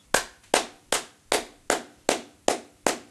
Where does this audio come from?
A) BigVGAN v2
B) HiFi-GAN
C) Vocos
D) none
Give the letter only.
D